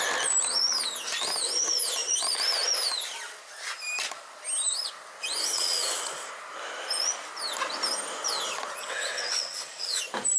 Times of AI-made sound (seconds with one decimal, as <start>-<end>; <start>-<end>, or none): 5.4-6.3; 8.8-10.0